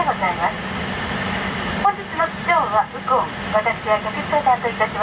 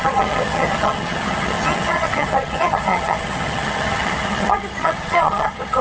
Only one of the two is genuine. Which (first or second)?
first